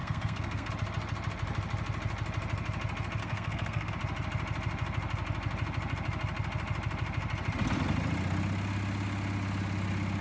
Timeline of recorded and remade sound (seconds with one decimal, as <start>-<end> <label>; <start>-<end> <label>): 0.0-0.7 remade; 0.7-3.2 recorded; 3.2-3.9 remade; 3.9-10.2 recorded